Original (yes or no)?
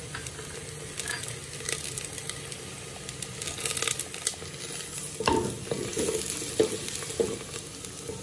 yes